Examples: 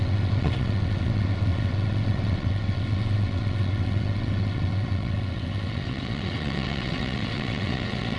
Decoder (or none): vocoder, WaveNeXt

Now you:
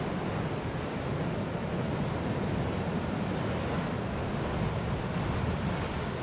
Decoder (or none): none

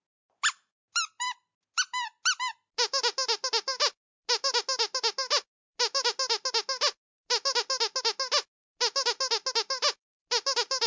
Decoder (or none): none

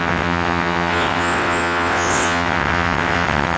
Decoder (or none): vocoder, WaveNeXt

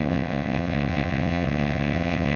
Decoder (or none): vocoder, WaveNeXt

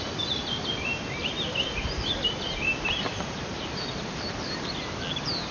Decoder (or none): none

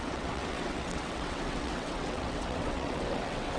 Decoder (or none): vocoder, WaveNeXt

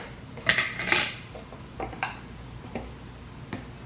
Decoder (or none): none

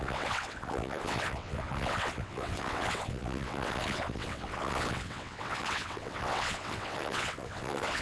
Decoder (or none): vocoder, WaveNeXt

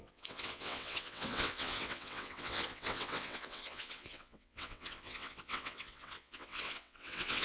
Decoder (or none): vocoder, WaveNeXt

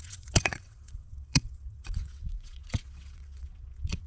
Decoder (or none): vocoder, WaveNeXt